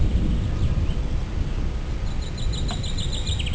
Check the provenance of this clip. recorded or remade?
recorded